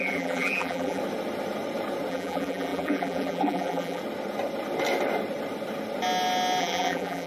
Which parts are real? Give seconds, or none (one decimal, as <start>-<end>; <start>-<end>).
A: 1.0-2.1; 4.0-6.6